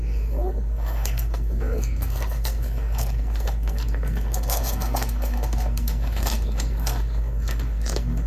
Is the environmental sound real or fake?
fake